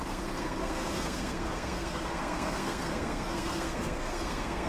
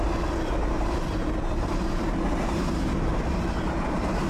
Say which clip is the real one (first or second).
second